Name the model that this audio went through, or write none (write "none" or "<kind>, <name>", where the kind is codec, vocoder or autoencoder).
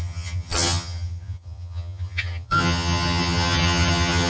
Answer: vocoder, HiFi-GAN